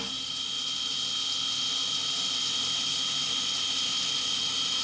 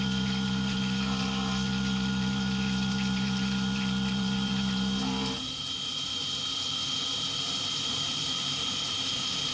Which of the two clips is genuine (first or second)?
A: first